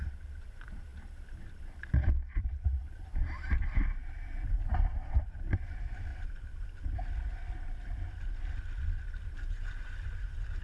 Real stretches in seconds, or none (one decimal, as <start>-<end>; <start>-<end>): 0.9-2.4; 6.1-9.3